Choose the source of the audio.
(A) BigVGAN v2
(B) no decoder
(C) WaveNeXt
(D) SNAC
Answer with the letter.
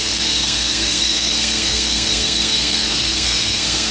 D